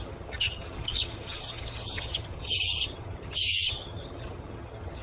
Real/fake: fake